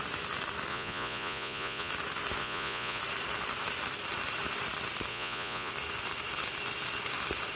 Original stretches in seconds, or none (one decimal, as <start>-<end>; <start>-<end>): 0.0-0.7; 1.9-2.4; 3.0-5.1; 5.7-7.6